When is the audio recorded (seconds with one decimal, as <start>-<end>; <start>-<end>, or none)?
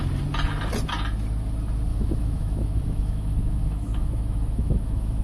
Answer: 0.0-1.9